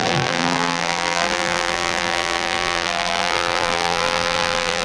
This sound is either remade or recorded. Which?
remade